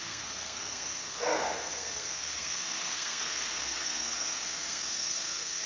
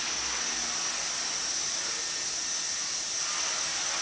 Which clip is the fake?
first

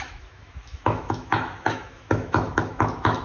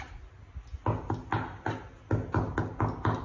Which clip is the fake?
first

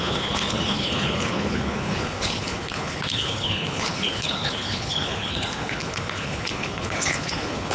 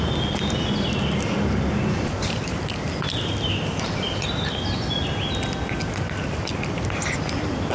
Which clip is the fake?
first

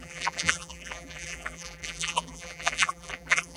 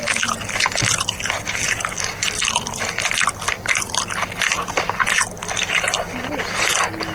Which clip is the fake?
first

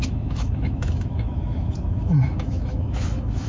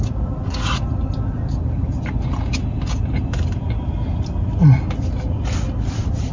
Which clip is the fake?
first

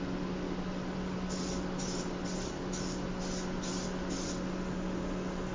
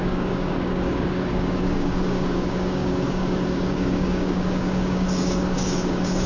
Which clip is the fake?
second